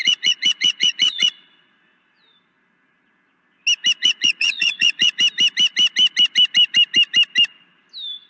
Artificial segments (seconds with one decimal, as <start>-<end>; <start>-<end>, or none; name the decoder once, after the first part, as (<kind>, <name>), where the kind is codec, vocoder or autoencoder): 0.0-1.7 (vocoder, Vocos); 4.0-5.2